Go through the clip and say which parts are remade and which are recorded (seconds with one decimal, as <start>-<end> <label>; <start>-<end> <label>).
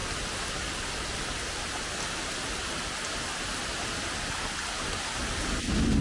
0.0-6.0 recorded